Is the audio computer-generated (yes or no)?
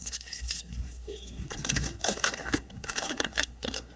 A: yes